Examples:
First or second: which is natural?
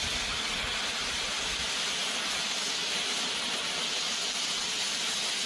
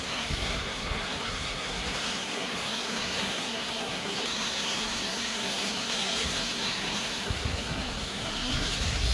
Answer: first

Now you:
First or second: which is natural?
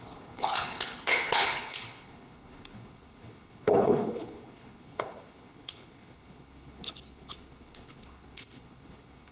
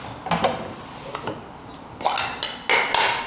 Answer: second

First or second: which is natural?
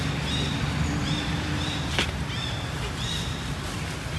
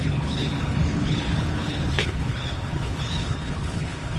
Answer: first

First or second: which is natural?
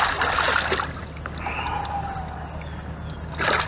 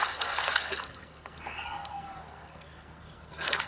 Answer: first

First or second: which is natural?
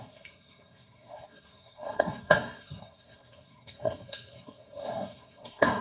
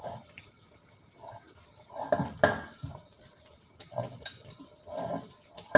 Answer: second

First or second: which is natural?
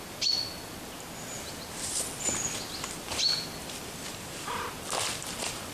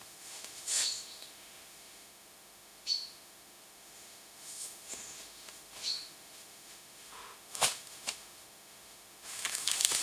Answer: first